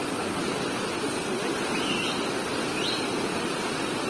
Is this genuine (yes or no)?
yes